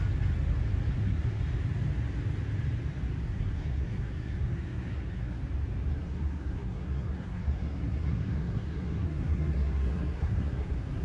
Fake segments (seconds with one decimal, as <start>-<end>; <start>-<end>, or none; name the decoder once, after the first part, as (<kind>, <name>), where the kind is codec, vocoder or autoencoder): 0.9-1.4 (codec, SNAC); 3.2-5.4; 5.9-11.0